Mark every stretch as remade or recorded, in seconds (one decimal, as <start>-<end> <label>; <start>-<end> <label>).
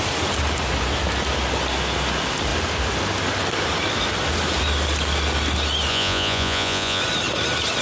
0.0-5.9 recorded; 5.9-7.0 remade; 7.0-7.8 recorded